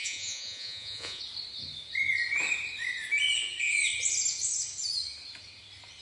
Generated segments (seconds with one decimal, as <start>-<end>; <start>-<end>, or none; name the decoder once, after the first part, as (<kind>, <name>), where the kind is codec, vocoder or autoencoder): 0.0-1.2 (vocoder, Vocos)